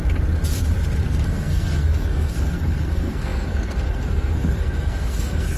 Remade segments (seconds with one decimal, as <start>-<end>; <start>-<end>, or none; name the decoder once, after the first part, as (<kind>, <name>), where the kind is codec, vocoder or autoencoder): 1.0-5.6 (codec, SNAC)